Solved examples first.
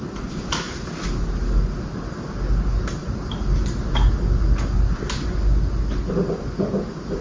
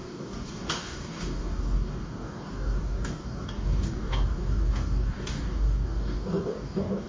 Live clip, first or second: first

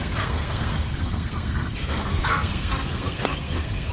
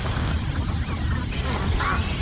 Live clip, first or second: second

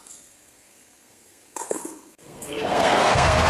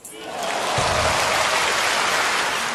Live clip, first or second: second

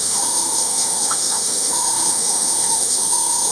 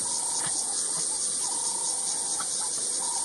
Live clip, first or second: second